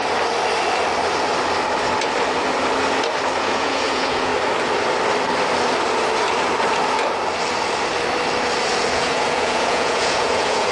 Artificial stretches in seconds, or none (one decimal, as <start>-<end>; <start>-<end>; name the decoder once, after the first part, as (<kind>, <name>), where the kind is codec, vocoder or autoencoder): 3.4-4.3 (vocoder, Vocos); 8.9-10.7